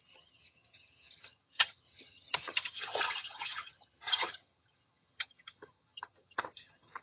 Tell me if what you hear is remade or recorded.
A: remade